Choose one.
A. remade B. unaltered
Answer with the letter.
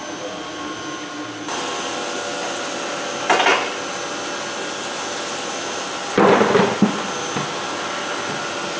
B